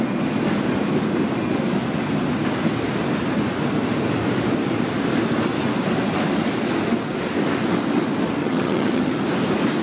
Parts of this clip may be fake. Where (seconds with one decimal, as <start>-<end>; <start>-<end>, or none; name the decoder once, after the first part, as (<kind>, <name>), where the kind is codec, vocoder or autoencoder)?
8.4-9.2 (vocoder, HiFi-GAN)